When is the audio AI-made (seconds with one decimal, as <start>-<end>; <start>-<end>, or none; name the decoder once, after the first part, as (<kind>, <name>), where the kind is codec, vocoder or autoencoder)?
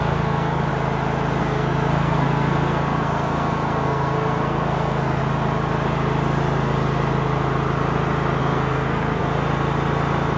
0.0-0.7 (codec, SNAC); 1.4-5.2; 8.4-9.2